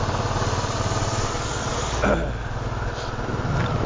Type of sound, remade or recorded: recorded